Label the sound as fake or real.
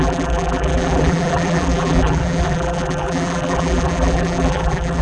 fake